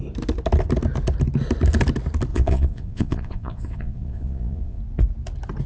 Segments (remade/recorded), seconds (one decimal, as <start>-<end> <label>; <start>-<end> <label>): 0.0-2.3 recorded; 2.3-4.8 remade; 4.8-5.7 recorded